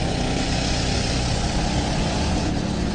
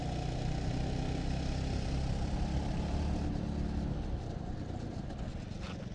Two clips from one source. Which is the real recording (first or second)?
second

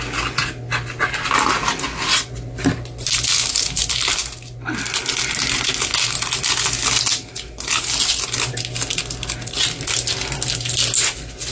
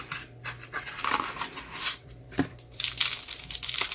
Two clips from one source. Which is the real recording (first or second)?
first